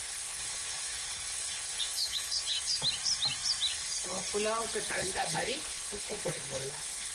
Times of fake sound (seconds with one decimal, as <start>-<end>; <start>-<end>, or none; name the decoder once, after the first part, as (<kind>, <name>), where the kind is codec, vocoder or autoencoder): 0.0-2.8 (codec, HILCodec); 3.7-4.3; 4.9-7.1